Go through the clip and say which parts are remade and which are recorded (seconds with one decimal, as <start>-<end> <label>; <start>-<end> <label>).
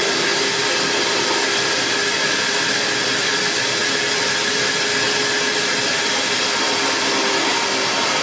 0.0-8.2 recorded